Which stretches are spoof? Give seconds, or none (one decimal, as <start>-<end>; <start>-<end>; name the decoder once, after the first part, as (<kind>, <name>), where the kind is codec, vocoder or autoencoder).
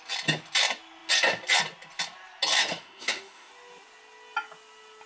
2.6-3.5 (autoencoder, DAC-VAE)